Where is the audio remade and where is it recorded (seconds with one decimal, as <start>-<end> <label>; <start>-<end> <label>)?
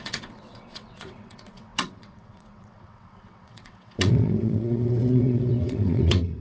0.0-6.4 remade